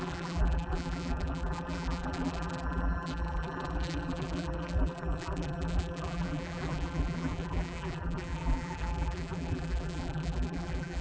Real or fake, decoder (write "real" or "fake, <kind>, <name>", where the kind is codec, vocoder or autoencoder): fake, vocoder, BigVGAN v2